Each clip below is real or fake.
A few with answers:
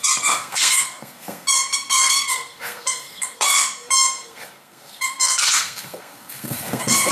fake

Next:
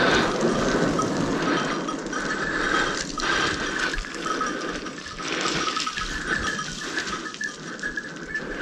real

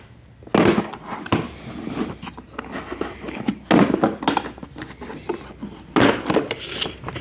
real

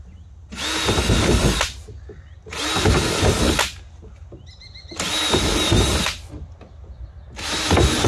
real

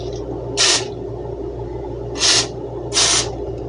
real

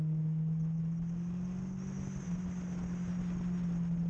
real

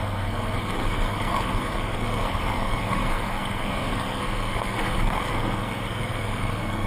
fake